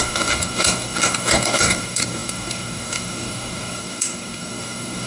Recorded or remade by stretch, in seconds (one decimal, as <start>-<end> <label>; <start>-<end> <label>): 0.0-5.1 remade